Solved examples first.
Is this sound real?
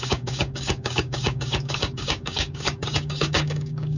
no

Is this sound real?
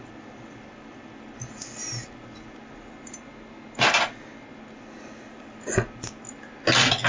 yes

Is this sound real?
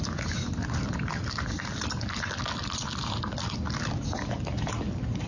yes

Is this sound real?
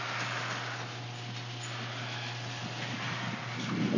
yes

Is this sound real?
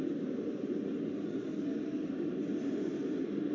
yes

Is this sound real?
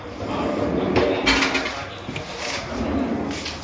yes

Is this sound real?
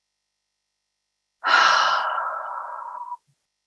yes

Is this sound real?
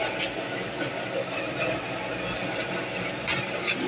yes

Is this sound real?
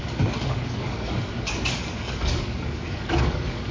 no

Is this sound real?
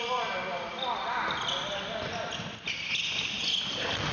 yes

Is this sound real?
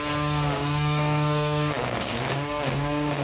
no